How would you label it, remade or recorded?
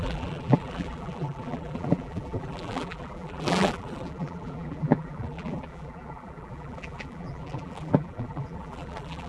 remade